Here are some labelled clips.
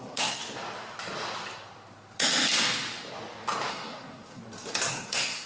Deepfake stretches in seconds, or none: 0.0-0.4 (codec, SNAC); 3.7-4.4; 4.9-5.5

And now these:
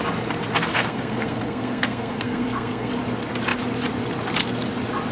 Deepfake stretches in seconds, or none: 0.7-2.9 (codec, SNAC)